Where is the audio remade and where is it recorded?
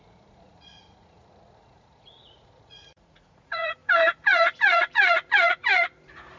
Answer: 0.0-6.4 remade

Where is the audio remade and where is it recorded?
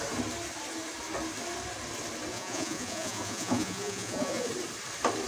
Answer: 0.0-2.3 recorded; 2.3-4.5 remade; 4.5-5.3 recorded